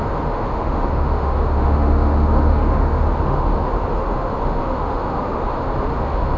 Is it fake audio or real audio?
fake